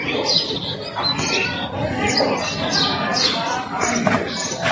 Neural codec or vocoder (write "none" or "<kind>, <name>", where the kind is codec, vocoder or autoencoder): none